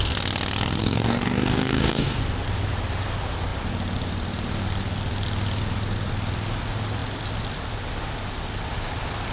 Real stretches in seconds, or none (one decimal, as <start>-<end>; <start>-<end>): 0.0-0.8; 2.2-9.3